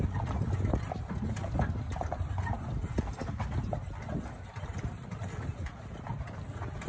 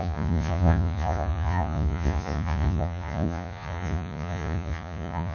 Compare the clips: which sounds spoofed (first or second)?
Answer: second